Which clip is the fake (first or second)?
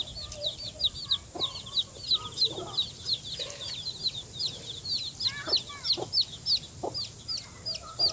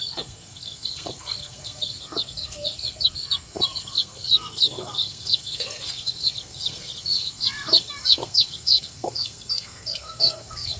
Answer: second